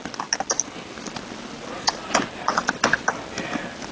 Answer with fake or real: real